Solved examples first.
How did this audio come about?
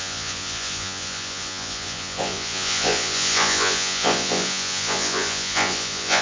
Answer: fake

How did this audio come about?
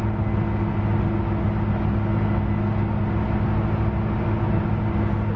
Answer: real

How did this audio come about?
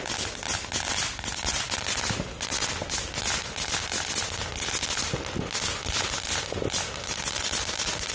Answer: real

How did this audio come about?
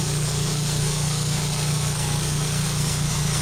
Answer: fake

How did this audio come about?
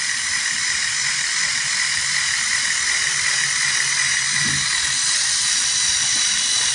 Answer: real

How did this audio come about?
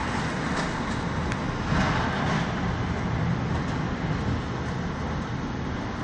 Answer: real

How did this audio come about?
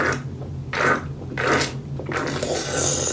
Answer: real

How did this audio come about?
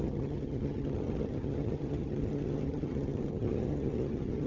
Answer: fake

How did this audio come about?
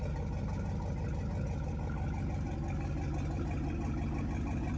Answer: real